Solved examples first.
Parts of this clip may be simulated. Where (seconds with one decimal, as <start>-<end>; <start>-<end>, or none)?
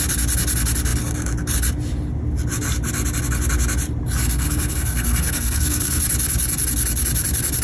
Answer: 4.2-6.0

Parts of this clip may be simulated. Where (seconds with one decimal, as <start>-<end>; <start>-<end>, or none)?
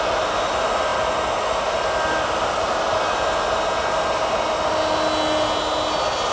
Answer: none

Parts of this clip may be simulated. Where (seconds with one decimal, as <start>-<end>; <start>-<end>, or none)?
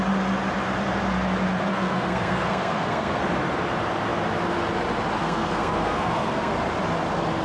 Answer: 1.7-3.2; 5.2-6.5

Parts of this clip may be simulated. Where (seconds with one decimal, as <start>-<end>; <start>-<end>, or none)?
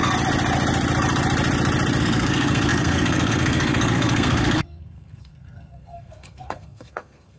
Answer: 2.0-7.4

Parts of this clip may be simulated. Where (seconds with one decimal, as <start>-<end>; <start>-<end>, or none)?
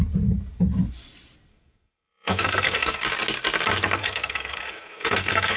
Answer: 1.5-3.0; 4.0-5.6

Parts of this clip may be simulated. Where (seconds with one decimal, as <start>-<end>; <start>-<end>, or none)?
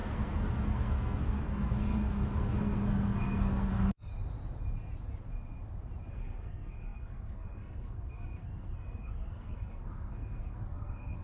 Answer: 0.0-4.1; 6.1-11.2